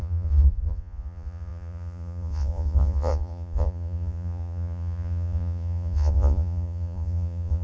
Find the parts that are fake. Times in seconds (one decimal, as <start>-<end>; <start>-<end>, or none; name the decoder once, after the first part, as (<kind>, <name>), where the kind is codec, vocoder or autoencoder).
0.0-7.6 (vocoder, Vocos)